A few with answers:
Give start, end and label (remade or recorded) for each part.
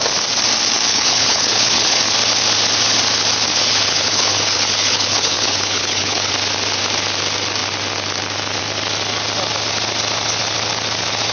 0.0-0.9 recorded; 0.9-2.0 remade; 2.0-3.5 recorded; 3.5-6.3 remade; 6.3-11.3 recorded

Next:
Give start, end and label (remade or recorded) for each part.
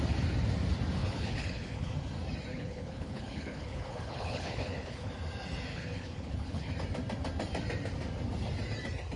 0.0-1.0 recorded; 1.0-1.9 remade; 1.9-2.5 recorded; 2.5-5.1 remade; 5.1-5.7 recorded; 5.7-6.7 remade; 6.7-9.2 recorded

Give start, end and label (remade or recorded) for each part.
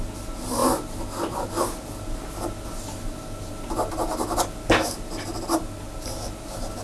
0.0-6.8 recorded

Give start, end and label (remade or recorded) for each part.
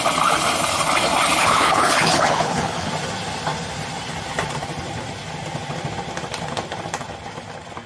0.0-1.4 recorded; 1.4-2.9 remade; 2.9-7.9 recorded